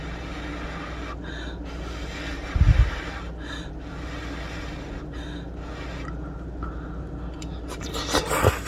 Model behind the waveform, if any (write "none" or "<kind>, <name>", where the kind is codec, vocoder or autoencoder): none